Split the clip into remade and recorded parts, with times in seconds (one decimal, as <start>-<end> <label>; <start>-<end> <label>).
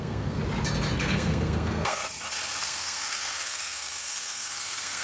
0.0-0.4 remade; 0.4-1.0 recorded; 1.0-2.0 remade; 2.0-2.6 recorded; 2.6-5.0 remade